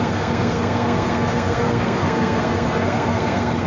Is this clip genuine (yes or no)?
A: no